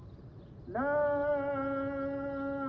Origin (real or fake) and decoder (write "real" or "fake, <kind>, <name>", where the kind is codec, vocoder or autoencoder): real